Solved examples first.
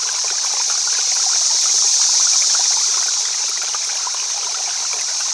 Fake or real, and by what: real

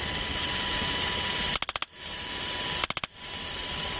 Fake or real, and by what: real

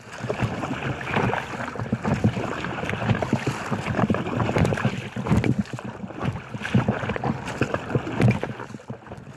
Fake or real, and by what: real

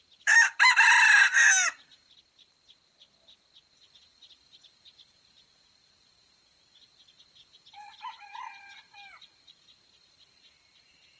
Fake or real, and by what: real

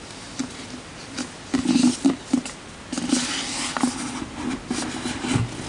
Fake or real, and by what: real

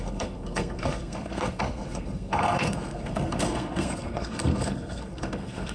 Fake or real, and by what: fake, codec, SNAC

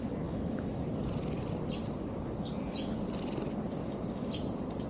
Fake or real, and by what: real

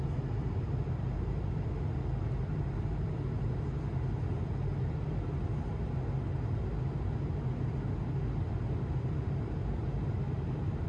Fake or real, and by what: real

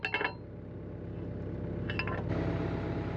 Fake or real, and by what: real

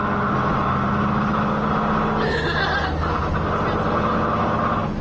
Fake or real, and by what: real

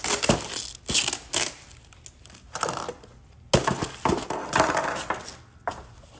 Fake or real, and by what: real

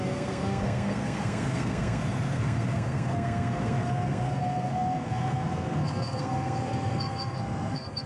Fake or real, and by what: fake, codec, SNAC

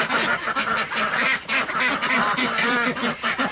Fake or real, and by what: real